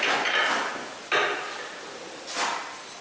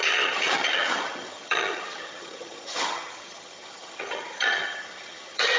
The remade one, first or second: second